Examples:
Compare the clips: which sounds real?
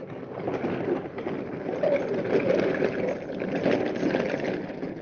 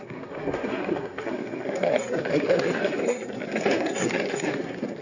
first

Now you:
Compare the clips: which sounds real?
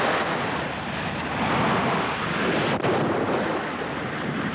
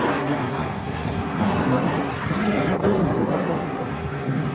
first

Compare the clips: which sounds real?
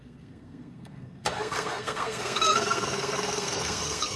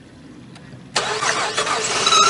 second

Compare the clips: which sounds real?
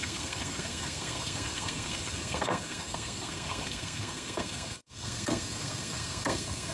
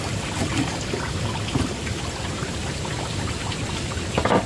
second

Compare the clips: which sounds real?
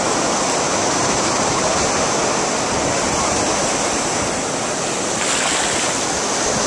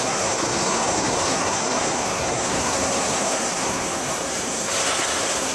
first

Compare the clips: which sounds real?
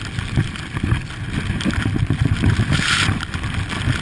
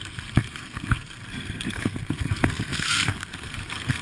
first